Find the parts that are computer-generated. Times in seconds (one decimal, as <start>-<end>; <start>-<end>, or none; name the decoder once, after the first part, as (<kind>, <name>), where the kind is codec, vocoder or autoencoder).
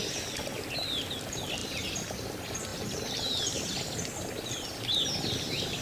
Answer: none